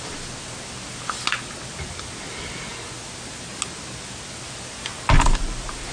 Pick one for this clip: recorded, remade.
recorded